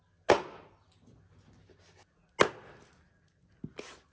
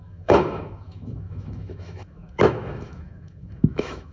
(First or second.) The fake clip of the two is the second